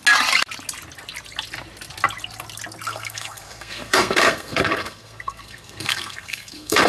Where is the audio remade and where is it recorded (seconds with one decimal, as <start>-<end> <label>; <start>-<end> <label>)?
0.0-2.9 recorded; 2.9-6.9 remade